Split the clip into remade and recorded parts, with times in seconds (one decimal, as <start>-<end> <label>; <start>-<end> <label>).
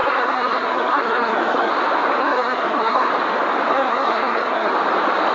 0.0-1.7 remade; 1.7-2.2 recorded; 2.2-3.1 remade; 3.1-3.7 recorded; 3.7-4.7 remade; 4.7-5.3 recorded